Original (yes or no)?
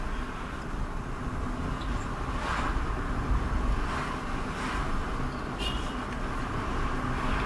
yes